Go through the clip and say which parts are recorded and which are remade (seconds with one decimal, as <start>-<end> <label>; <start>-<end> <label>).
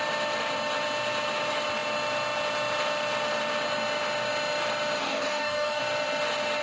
0.0-5.0 recorded; 5.0-5.8 remade; 5.8-6.6 recorded